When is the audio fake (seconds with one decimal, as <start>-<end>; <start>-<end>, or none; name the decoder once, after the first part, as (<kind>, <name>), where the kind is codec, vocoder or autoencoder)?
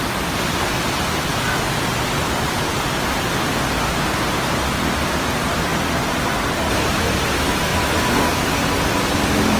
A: none